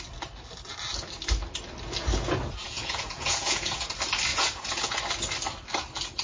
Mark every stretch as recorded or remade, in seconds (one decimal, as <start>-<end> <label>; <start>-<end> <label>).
0.0-2.6 recorded; 2.6-3.9 remade; 3.9-4.3 recorded; 4.3-5.0 remade; 5.0-6.2 recorded